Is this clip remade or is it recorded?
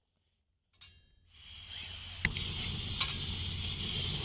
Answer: recorded